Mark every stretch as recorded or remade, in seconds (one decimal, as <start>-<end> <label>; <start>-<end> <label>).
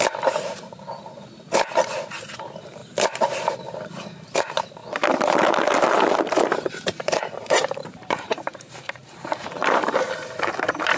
0.0-4.8 remade; 4.8-6.7 recorded; 6.7-11.0 remade